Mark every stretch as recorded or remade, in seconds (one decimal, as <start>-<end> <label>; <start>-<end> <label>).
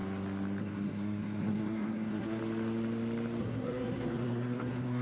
0.0-0.6 recorded; 0.6-2.4 remade; 2.4-3.4 recorded; 3.4-5.0 remade